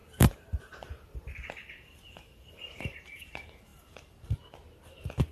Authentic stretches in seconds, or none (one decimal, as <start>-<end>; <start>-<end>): 3.0-5.3